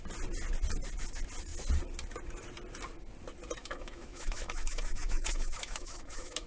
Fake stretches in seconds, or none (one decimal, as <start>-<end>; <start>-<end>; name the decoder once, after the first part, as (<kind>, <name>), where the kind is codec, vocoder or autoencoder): 3.6-6.5 (autoencoder, DAC-VAE)